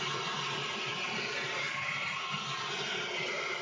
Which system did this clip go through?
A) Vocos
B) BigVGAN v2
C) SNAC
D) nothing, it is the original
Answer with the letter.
D